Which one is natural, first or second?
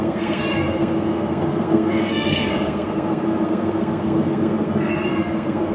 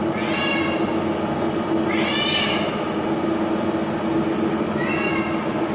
second